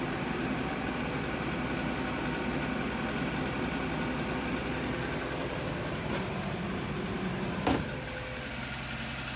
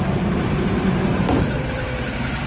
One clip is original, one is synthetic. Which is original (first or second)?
first